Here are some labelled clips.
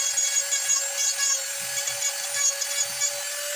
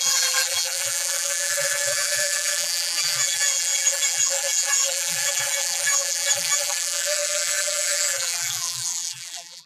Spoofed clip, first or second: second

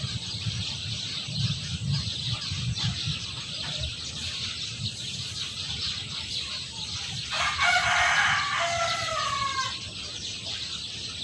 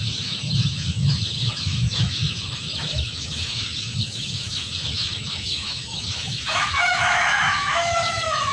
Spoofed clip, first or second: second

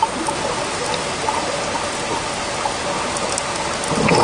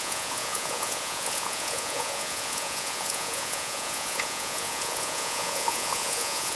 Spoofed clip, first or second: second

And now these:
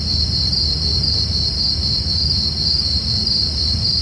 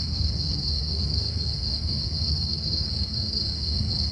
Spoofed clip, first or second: second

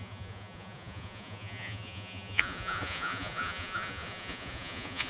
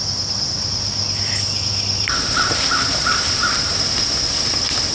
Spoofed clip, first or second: first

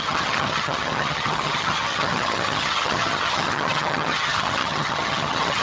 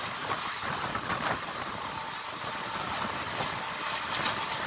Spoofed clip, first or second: first